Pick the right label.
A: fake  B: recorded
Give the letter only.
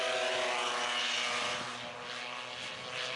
B